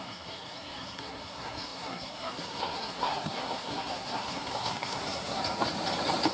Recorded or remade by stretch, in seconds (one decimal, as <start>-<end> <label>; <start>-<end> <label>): 0.0-5.4 remade; 5.4-6.3 recorded